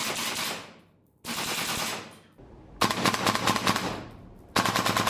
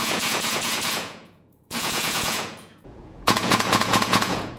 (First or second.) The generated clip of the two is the second